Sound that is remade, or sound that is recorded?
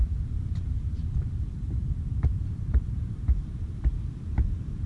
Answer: remade